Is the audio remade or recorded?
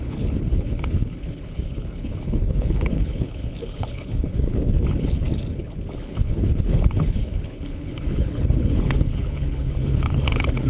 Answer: remade